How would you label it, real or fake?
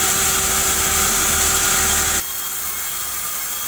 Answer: real